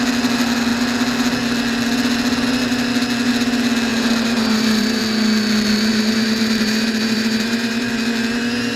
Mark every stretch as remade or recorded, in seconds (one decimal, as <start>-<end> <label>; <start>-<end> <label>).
0.0-3.9 recorded; 3.9-5.0 remade; 5.0-5.9 recorded; 5.9-7.9 remade; 7.9-8.8 recorded